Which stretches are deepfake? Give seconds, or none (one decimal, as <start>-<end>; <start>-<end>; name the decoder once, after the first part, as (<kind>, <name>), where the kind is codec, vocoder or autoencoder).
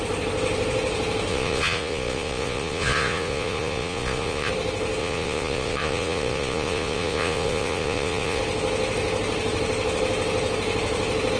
1.3-4.5 (vocoder, Vocos); 5.0-8.4